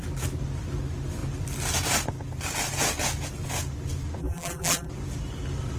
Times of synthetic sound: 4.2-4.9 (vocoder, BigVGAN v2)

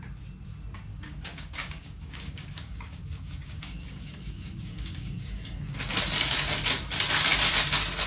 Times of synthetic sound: 0.9-5.8 (codec, DAC)

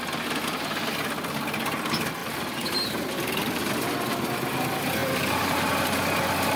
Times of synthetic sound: 2.2-3.6 (vocoder, BigVGAN v2); 5.0-5.7

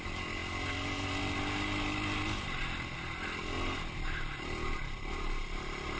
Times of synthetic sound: none

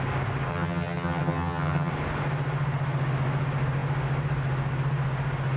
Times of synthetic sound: 0.5-1.9 (vocoder, HiFi-GAN)